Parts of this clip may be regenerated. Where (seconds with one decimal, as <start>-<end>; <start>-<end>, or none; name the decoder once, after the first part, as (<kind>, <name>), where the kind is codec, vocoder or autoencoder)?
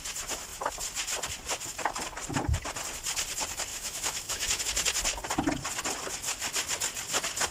3.7-4.6 (autoencoder, DAC-VAE)